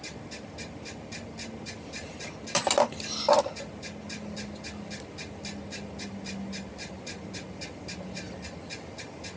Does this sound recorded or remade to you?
recorded